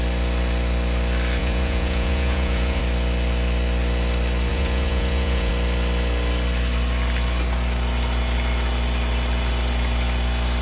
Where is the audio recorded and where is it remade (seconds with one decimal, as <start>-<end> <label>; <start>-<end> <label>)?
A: 0.0-1.4 recorded; 1.4-2.8 remade; 2.8-4.5 recorded; 4.5-5.5 remade; 5.5-10.6 recorded